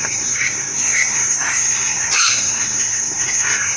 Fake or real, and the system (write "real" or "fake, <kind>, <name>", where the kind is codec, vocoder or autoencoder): fake, codec, SNAC